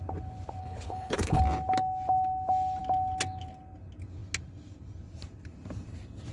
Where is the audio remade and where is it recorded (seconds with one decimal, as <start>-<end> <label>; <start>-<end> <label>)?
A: 0.0-0.6 recorded; 0.6-1.4 remade; 1.4-6.3 recorded

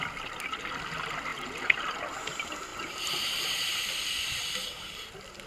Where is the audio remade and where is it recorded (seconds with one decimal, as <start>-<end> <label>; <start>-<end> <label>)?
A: 0.0-1.3 recorded; 1.3-1.8 remade; 1.8-2.7 recorded; 2.7-3.8 remade; 3.8-5.5 recorded

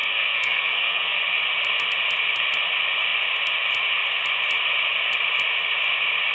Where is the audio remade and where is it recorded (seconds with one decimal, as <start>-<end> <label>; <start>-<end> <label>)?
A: 0.0-1.2 remade; 1.2-6.3 recorded

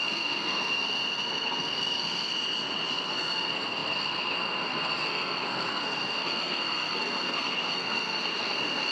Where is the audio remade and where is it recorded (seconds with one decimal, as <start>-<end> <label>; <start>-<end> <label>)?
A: 0.0-2.3 remade; 2.3-2.9 recorded; 2.9-8.9 remade